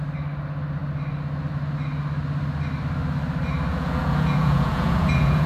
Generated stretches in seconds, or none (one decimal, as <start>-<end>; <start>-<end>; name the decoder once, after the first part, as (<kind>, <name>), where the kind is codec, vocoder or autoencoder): 3.7-5.5 (vocoder, Vocos)